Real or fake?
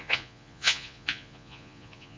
fake